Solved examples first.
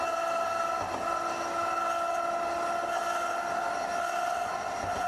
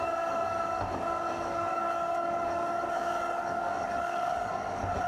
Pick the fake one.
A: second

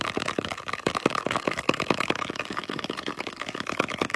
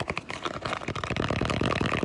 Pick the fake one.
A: first